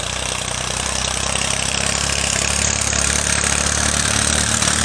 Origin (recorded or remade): remade